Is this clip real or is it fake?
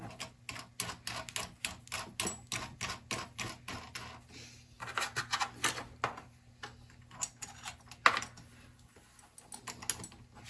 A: real